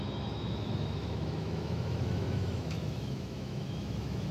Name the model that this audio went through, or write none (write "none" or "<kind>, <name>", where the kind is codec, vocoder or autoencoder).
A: autoencoder, DAC-VAE